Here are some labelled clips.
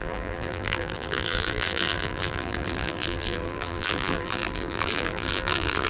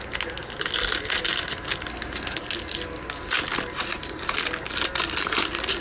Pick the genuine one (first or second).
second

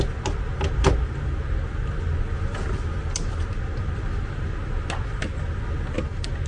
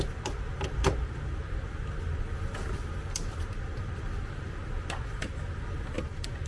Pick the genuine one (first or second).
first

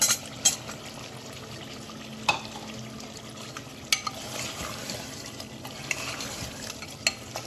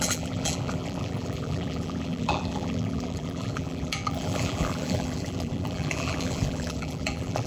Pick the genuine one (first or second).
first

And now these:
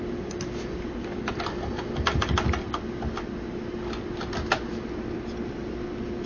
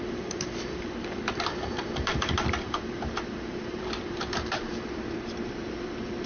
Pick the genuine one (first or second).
first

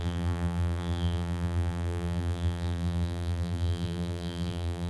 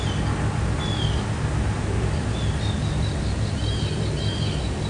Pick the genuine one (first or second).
second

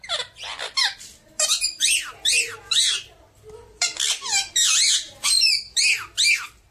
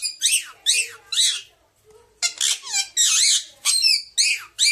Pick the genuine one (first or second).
second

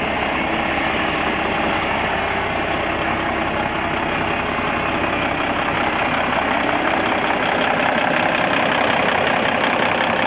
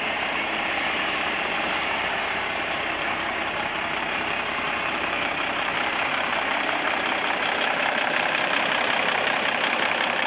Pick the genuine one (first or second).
first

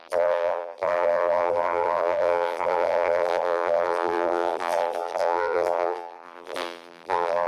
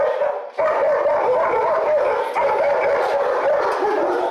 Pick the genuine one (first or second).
second